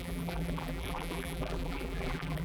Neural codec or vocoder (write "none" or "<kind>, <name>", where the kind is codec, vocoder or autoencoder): vocoder, BigVGAN v2